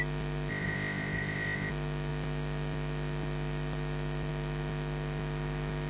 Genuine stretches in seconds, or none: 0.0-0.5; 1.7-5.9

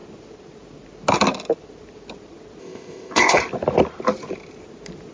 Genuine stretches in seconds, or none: 0.0-2.6; 3.4-5.1

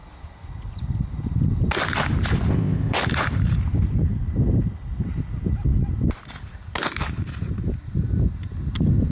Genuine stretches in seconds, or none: 0.0-2.5; 3.0-9.1

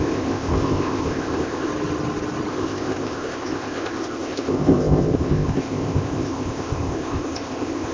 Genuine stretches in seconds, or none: 1.7-2.5